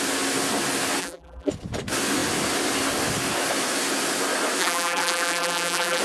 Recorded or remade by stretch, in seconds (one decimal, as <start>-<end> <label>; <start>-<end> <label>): 0.0-1.0 recorded; 1.0-1.5 remade; 1.5-4.6 recorded; 4.6-6.0 remade